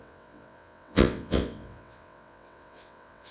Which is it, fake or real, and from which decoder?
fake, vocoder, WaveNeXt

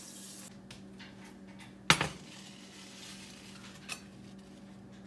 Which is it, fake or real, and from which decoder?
real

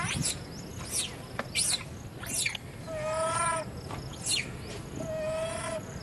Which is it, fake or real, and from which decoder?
real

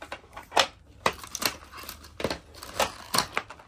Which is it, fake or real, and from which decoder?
real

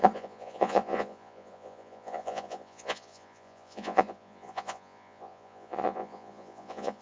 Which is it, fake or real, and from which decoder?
fake, vocoder, Vocos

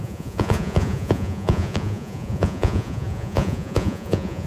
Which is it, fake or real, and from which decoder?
fake, vocoder, Vocos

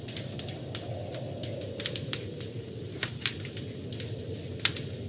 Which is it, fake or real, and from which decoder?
real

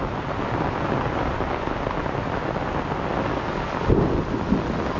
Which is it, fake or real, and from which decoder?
real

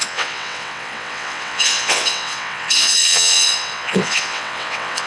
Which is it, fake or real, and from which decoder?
fake, vocoder, WaveNeXt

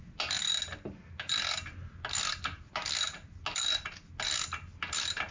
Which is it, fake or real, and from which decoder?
real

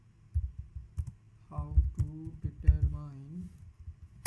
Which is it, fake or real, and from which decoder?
real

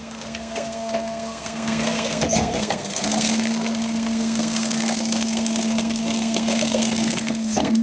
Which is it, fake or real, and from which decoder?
fake, codec, SNAC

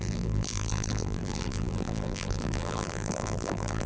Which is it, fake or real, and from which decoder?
fake, vocoder, BigVGAN v2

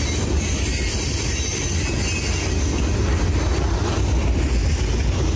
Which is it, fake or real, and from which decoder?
real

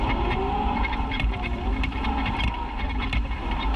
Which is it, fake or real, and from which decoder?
fake, vocoder, BigVGAN v2